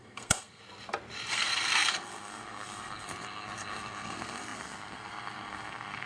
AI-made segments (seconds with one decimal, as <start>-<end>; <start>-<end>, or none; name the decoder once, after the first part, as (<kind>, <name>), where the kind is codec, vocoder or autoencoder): 0.0-0.6 (codec, SNAC); 1.3-6.1